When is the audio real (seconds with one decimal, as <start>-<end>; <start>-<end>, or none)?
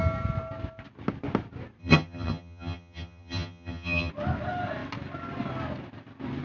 0.0-1.8; 4.1-6.4